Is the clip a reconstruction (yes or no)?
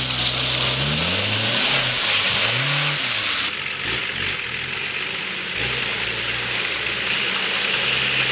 no